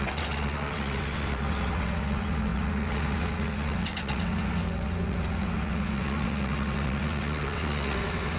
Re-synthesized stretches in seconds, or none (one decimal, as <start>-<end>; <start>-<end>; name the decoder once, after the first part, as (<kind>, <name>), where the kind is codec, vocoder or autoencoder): 0.0-8.4 (vocoder, WaveNeXt)